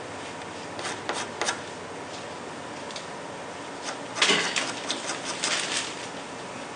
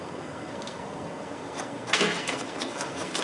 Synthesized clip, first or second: second